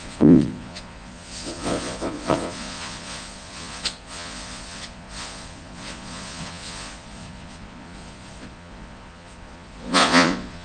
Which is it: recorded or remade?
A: remade